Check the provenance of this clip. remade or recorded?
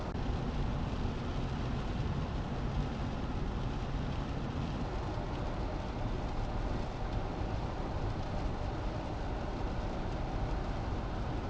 recorded